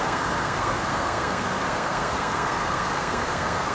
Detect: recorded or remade remade